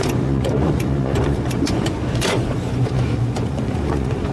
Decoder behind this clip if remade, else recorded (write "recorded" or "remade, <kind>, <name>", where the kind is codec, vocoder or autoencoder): remade, vocoder, Vocos